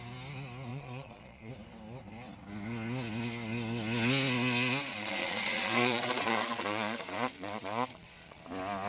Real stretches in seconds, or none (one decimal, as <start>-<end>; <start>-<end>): 0.0-0.7; 1.5-4.9; 8.4-8.9